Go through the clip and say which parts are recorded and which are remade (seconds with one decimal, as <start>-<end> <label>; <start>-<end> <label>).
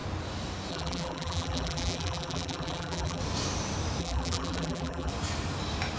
0.0-0.7 recorded; 0.7-3.2 remade; 3.2-4.0 recorded; 4.0-5.1 remade; 5.1-6.0 recorded